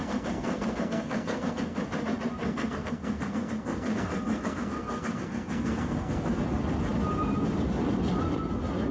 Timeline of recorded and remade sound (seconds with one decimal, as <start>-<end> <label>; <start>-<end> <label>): 0.0-1.8 remade; 1.8-2.4 recorded; 2.4-6.4 remade; 6.4-8.9 recorded